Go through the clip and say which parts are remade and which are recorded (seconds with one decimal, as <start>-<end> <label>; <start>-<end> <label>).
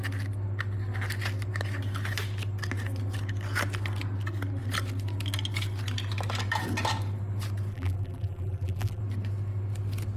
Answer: 0.0-7.7 recorded; 7.7-9.0 remade; 9.0-10.2 recorded